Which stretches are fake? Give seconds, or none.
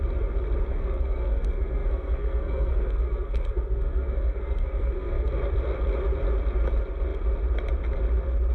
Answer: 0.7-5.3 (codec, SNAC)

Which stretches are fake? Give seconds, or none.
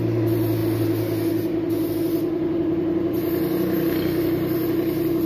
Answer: none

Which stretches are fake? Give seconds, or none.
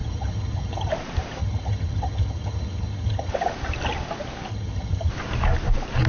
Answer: 0.0-0.9 (vocoder, HiFi-GAN); 1.4-3.3; 4.5-5.1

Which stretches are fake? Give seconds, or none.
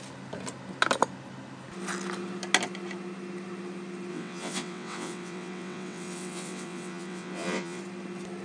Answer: 4.1-7.8 (vocoder, WaveNeXt)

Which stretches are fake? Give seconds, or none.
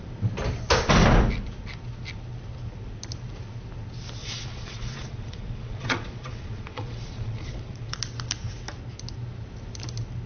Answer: 4.2-8.0 (vocoder, Vocos)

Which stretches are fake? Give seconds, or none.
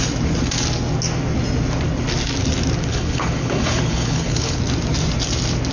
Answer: 2.9-4.6 (codec, HILCodec)